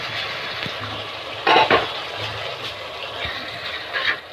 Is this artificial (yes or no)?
no